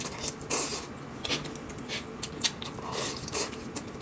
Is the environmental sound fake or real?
real